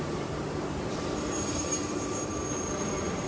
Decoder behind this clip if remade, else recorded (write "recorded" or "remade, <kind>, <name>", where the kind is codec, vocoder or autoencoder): remade, vocoder, BigVGAN v2